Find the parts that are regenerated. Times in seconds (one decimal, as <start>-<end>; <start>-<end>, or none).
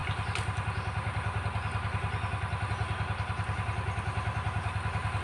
none